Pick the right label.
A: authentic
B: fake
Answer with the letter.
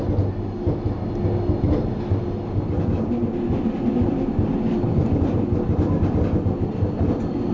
A